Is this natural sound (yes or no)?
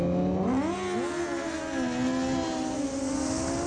yes